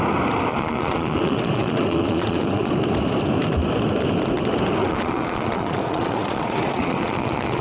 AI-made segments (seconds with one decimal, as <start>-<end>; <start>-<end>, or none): 0.5-2.7; 4.8-7.6